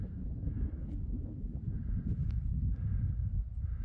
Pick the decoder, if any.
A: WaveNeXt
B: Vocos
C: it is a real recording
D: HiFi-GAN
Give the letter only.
C